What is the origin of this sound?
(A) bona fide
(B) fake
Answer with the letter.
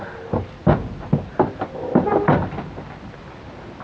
A